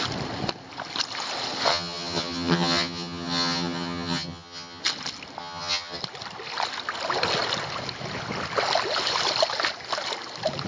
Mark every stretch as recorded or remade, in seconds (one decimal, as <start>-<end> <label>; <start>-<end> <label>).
0.0-1.7 recorded; 1.7-4.8 remade; 4.8-5.4 recorded; 5.4-6.0 remade; 6.0-10.7 recorded